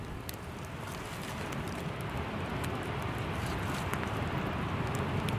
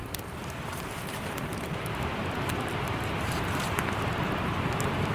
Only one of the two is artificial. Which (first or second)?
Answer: second